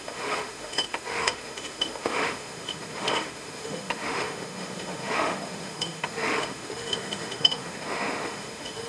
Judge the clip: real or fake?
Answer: fake